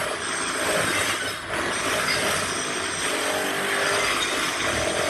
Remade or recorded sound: recorded